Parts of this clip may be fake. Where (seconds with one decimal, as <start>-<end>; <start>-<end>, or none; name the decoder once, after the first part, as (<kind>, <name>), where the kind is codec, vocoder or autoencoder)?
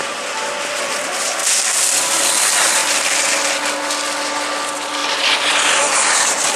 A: none